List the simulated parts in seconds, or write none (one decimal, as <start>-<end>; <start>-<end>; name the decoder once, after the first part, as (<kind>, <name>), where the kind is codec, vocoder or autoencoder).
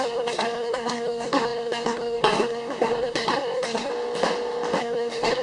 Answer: 0.0-3.9 (codec, SNAC); 4.8-5.4